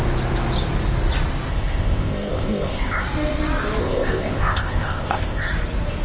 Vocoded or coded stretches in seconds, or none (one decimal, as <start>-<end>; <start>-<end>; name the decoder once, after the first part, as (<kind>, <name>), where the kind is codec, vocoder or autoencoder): 1.5-3.0 (codec, ZipCodec); 3.8-5.5